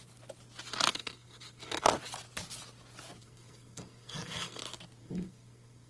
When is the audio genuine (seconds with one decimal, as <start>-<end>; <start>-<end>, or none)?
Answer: 0.0-0.9; 1.9-3.2; 4.6-5.0